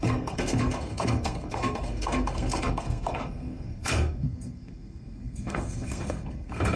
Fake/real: fake